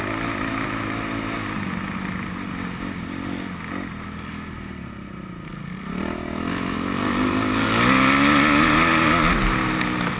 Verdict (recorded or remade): recorded